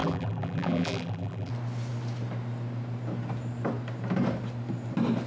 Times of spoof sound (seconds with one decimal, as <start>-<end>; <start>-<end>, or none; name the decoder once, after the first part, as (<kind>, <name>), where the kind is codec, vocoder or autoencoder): 0.0-1.5 (vocoder, BigVGAN v2)

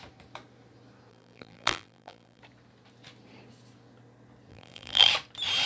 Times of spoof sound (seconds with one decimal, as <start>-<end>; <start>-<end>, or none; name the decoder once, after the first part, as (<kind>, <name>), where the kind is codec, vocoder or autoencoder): 1.1-2.4 (vocoder, BigVGAN v2); 4.5-5.1